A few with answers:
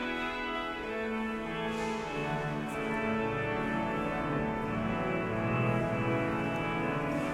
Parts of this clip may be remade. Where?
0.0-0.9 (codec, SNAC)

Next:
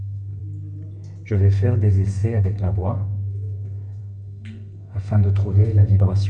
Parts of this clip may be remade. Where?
0.0-0.4 (codec, SNAC); 1.3-6.3

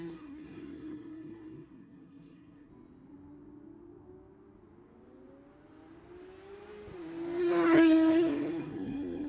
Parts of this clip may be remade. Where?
0.0-2.7 (codec, SNAC); 7.4-9.3

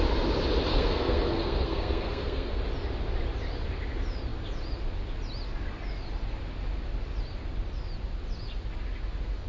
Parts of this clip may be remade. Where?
0.7-2.6 (codec, SNAC)

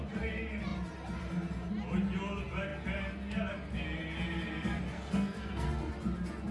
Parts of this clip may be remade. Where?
4.9-5.9 (codec, SNAC)

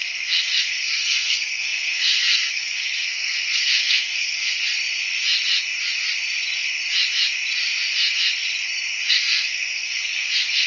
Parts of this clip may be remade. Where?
0.0-4.7 (codec, SNAC); 9.1-10.7

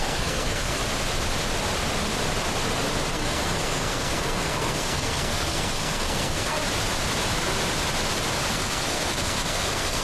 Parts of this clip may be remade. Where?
0.0-0.8 (codec, SNAC); 3.1-6.6; 8.5-10.0